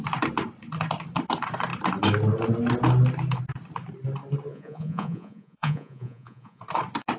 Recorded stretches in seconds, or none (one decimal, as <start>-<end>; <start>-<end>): 0.0-4.5; 6.6-7.2